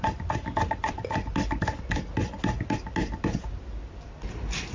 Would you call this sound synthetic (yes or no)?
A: no